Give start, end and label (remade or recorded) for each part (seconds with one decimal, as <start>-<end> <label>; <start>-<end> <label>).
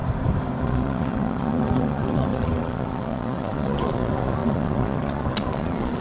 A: 0.0-0.6 recorded; 0.6-6.0 remade